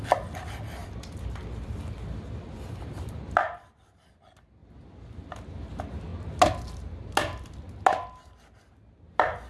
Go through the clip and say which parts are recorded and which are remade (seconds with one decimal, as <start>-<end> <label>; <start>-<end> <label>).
0.0-0.8 recorded; 0.8-3.9 remade; 3.9-4.6 recorded; 4.6-5.3 remade; 5.3-9.5 recorded